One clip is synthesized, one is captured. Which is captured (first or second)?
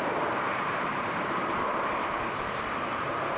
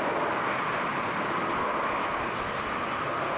second